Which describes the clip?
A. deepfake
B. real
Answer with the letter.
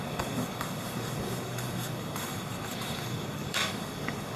A